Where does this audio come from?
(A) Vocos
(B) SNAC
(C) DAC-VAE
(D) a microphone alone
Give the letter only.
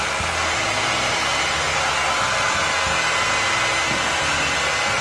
D